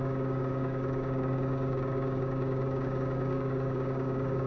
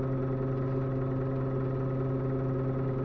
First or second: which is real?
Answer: second